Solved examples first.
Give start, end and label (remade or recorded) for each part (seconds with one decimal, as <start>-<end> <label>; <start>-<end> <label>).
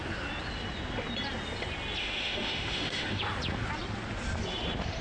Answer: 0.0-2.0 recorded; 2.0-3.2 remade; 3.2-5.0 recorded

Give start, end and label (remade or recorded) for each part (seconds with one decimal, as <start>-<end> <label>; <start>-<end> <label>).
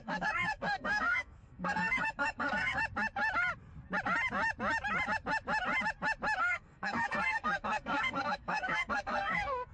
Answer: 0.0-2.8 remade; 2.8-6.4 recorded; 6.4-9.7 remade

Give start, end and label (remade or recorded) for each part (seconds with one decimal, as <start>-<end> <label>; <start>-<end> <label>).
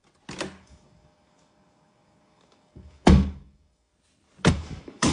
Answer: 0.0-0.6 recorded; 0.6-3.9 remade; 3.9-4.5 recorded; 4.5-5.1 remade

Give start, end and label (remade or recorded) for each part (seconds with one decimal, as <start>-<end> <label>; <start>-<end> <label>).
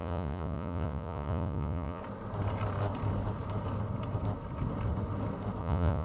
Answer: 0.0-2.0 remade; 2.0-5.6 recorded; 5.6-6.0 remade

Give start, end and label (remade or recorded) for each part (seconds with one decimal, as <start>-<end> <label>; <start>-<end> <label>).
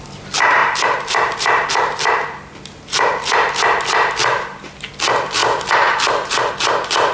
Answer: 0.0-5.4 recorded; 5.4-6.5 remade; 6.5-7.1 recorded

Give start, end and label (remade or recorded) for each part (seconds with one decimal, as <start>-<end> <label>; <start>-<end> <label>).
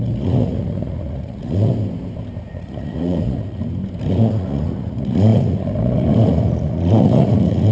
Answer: 0.0-1.7 remade; 1.7-2.4 recorded; 2.4-3.6 remade; 3.6-4.1 recorded; 4.1-7.7 remade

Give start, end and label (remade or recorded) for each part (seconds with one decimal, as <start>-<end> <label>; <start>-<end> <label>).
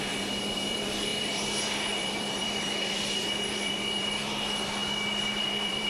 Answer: 0.0-4.8 remade; 4.8-5.5 recorded; 5.5-5.9 remade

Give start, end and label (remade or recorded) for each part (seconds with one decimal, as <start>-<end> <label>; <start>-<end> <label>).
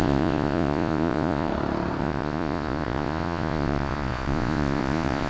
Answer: 0.0-1.5 remade; 1.5-2.0 recorded; 2.0-5.3 remade